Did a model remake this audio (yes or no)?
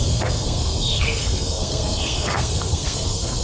yes